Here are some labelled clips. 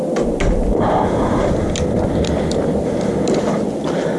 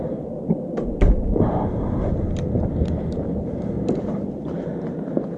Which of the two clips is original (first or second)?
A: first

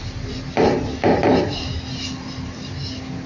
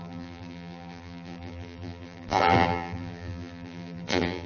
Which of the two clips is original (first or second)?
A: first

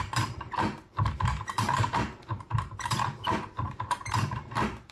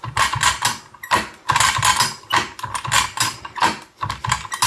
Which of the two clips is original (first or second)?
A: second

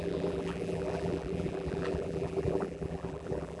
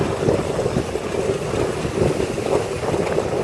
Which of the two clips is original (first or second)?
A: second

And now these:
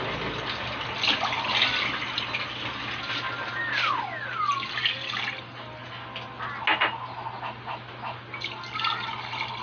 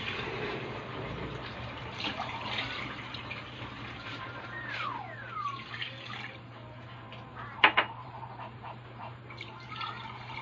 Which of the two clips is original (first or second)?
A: first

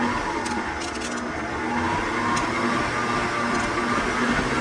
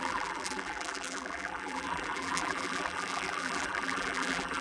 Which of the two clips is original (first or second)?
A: first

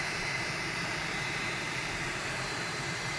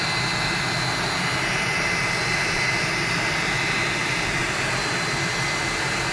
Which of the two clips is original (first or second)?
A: second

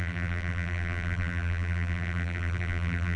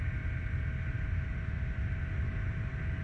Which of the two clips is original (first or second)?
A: second